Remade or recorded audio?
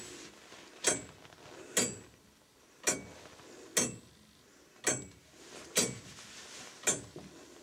recorded